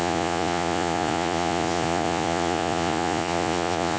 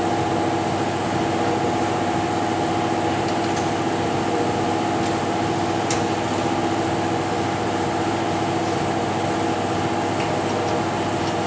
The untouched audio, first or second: second